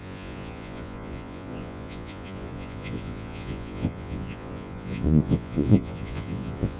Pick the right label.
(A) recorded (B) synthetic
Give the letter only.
B